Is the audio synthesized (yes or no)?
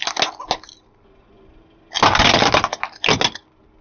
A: no